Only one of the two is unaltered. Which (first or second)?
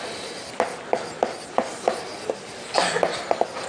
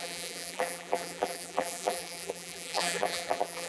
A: first